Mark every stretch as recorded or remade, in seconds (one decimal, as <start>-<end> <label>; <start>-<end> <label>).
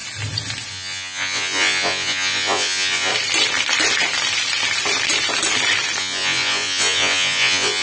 0.0-0.7 recorded; 0.7-3.1 remade; 3.1-6.0 recorded; 6.0-7.8 remade